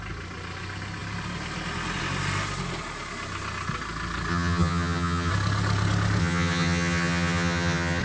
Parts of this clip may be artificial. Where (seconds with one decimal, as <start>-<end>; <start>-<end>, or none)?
4.3-5.3; 6.2-8.0